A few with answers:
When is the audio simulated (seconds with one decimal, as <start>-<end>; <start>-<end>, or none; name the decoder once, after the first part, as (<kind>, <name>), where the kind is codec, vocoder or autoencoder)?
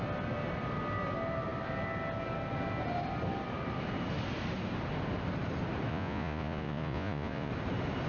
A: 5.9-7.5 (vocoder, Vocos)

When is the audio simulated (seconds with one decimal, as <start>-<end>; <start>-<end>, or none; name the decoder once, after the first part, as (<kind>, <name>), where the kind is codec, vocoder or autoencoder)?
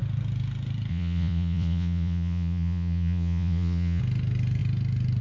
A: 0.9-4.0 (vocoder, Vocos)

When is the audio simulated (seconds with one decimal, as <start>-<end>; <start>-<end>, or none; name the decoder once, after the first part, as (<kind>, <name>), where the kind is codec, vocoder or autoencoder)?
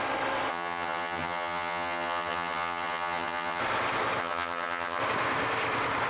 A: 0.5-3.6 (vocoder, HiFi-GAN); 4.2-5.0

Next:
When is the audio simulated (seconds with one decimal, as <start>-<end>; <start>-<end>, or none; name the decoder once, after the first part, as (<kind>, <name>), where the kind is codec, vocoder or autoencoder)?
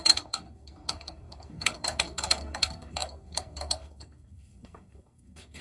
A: 0.0-5.6 (codec, SNAC)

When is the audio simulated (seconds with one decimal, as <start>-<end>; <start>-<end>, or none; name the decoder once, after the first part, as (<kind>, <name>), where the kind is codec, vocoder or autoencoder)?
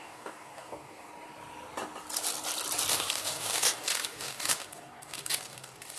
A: 0.0-1.1 (codec, DAC); 2.9-6.0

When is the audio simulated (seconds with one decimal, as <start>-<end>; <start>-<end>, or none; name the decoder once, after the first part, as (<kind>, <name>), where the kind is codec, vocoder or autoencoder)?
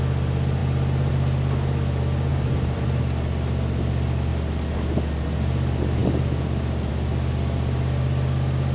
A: 2.3-3.0 (vocoder, BigVGAN v2)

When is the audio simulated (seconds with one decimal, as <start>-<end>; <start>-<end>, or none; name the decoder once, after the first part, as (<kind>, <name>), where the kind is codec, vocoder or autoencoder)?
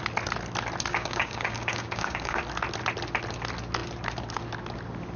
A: 0.9-2.4 (codec, DAC)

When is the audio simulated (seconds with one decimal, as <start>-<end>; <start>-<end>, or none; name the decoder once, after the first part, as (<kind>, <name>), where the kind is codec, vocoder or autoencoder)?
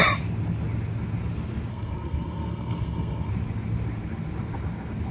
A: 1.7-3.3 (codec, SNAC)